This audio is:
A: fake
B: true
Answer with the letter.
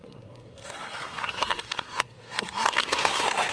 A